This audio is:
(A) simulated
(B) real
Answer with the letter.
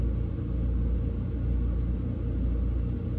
B